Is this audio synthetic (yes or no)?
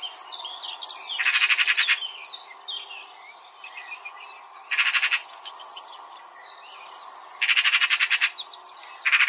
no